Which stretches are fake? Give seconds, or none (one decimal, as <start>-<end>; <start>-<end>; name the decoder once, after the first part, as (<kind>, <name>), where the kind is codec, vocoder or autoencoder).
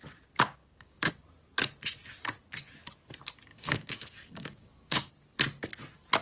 0.6-1.1 (codec, DAC); 3.5-5.1